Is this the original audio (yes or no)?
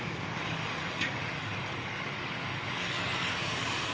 no